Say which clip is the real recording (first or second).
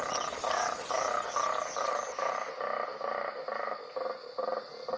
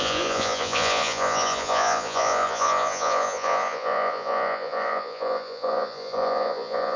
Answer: first